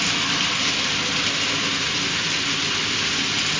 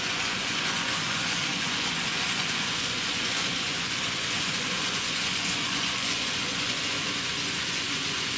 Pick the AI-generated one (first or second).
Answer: second